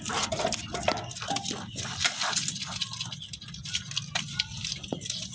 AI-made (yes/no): yes